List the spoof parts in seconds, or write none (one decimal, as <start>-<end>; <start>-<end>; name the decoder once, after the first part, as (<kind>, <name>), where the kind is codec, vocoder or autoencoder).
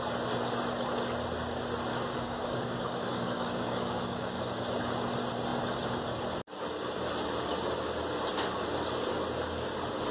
1.9-4.4 (codec, DAC)